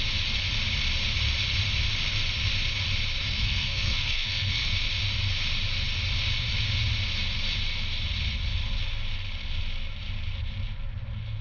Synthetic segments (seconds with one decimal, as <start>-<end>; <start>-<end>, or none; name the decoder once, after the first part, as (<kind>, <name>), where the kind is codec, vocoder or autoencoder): 3.2-4.7 (codec, SNAC)